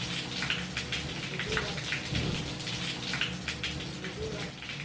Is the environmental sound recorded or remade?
recorded